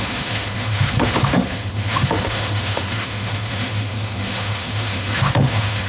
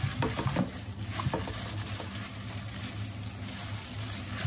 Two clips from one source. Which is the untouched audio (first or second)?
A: second